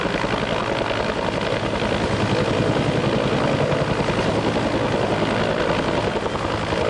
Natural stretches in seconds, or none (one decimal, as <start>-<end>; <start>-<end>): 0.0-6.9